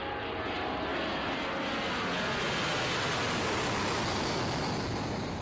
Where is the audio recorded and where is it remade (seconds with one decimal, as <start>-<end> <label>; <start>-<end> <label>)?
0.0-5.4 recorded